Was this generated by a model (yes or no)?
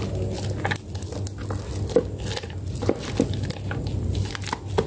no